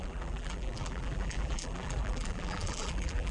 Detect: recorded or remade remade